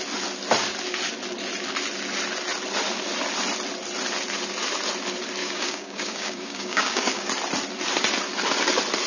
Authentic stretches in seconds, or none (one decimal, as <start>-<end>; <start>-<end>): 0.0-5.4; 7.3-9.1